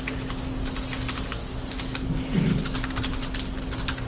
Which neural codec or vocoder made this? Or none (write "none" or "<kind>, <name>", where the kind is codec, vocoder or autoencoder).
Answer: none